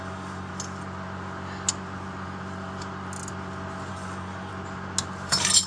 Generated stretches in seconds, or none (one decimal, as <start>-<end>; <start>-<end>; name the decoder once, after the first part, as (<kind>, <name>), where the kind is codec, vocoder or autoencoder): 0.0-0.5 (codec, DAC); 3.9-4.5; 5.3-5.7